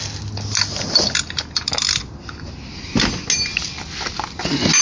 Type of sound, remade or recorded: recorded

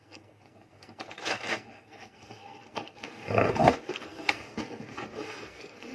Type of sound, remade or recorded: remade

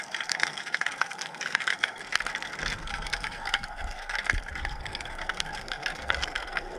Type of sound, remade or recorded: remade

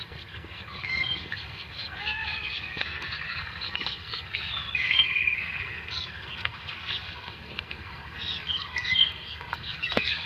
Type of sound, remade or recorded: remade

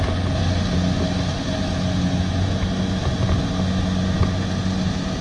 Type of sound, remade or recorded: recorded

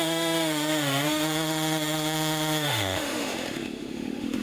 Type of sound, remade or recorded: remade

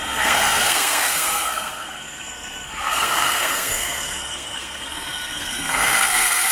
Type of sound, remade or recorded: remade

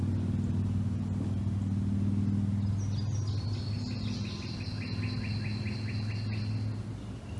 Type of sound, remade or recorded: recorded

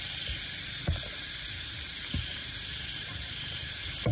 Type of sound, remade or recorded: remade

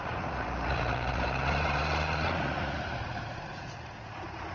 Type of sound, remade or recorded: remade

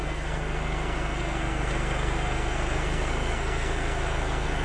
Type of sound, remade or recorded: remade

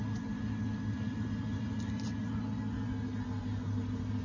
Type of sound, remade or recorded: recorded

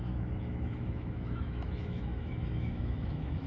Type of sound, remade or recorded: remade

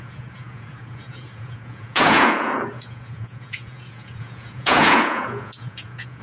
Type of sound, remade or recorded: remade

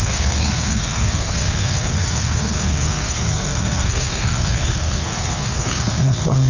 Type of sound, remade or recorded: remade